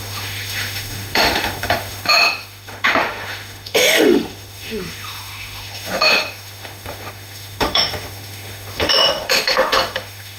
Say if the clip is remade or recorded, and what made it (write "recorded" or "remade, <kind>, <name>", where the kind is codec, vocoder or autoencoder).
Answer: remade, autoencoder, DAC-VAE